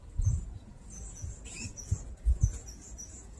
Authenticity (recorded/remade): remade